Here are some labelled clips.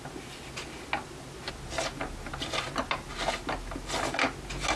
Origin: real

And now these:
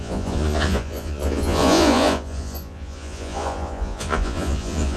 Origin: fake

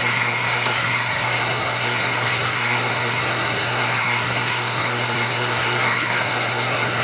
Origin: fake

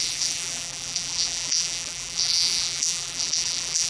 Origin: fake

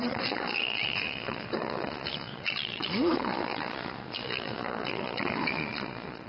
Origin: fake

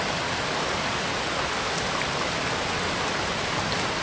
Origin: real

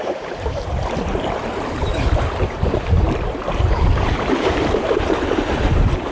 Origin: fake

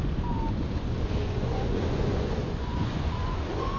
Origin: fake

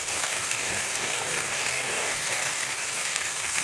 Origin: fake